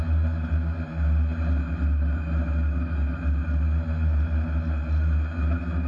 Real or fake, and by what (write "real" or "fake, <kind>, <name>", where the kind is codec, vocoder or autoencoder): real